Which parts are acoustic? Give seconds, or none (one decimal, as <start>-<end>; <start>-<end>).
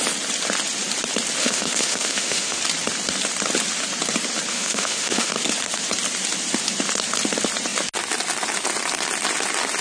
0.0-1.4; 2.6-4.5; 5.3-9.8